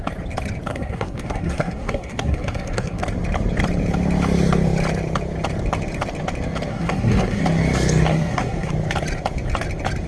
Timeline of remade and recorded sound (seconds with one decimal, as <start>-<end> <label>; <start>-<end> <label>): 0.0-0.7 recorded; 0.7-3.0 remade; 3.0-6.7 recorded; 6.7-7.4 remade; 7.4-8.1 recorded; 8.1-8.7 remade; 8.7-10.1 recorded